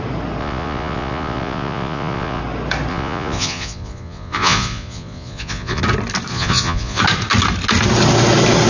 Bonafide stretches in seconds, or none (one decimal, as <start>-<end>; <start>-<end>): 0.0-0.4; 2.4-2.9; 5.8-6.3; 7.0-8.7